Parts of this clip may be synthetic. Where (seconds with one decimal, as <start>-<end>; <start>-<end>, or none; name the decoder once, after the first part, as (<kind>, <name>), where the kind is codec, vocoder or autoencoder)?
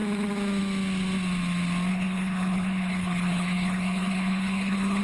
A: 1.9-5.0 (codec, HILCodec)